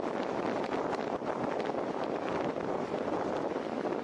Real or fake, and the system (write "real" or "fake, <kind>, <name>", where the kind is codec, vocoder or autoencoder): real